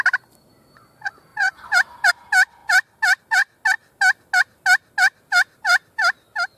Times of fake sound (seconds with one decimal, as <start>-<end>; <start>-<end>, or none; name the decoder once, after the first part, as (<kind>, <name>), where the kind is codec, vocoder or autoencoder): 1.3-2.1 (vocoder, BigVGAN v2)